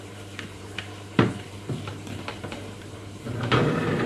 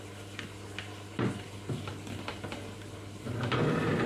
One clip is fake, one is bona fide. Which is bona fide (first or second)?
second